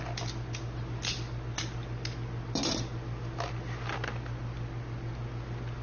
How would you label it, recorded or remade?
recorded